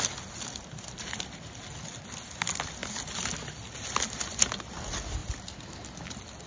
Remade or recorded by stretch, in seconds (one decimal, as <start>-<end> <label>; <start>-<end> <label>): 0.0-5.2 recorded; 5.2-5.7 remade; 5.7-6.5 recorded